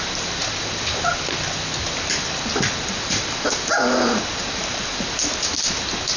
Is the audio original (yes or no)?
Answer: yes